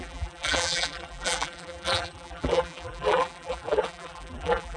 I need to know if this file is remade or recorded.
remade